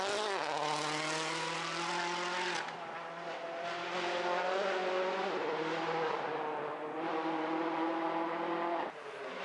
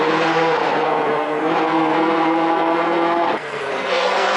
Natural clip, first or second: first